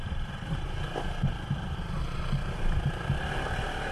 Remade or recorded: recorded